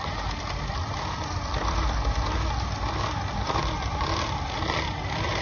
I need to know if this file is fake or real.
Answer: real